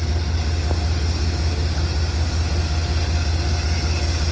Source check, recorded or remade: recorded